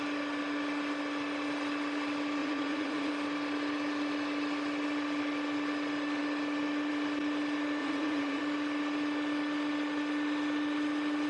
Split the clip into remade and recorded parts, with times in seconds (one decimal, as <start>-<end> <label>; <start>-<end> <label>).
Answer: 0.0-2.4 recorded; 2.4-3.1 remade; 3.1-7.8 recorded; 7.8-8.4 remade; 8.4-11.3 recorded